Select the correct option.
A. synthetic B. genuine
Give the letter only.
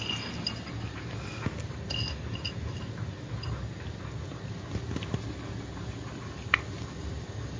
B